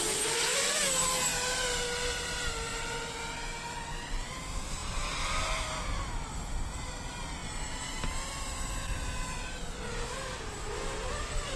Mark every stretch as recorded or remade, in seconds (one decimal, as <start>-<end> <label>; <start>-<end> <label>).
0.0-11.6 recorded